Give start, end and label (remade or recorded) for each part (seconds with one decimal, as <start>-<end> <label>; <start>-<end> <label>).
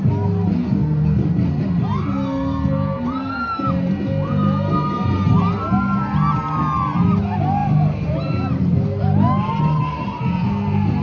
0.0-11.0 recorded